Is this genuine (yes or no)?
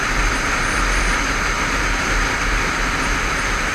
yes